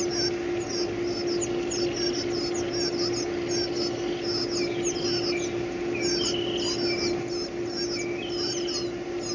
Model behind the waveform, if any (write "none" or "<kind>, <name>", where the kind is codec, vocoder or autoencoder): none